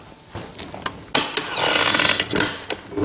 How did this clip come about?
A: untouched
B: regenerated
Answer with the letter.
A